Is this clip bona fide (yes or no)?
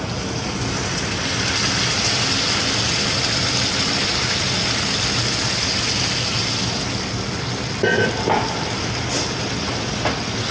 yes